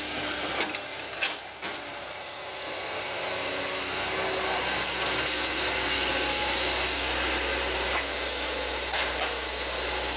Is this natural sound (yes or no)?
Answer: yes